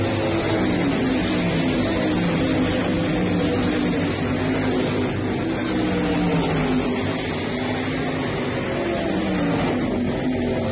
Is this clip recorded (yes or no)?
yes